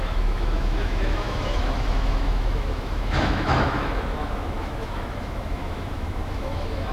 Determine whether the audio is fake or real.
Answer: fake